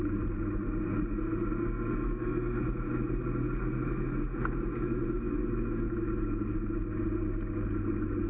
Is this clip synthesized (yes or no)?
no